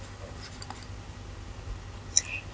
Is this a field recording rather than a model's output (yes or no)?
yes